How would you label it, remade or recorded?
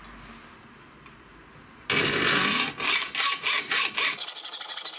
recorded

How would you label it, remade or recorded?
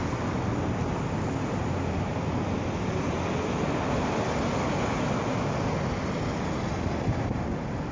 recorded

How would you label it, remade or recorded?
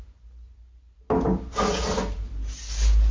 recorded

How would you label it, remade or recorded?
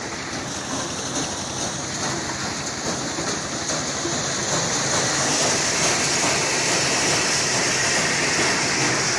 recorded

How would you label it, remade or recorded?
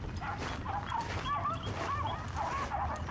recorded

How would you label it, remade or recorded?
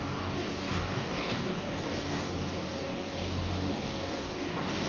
remade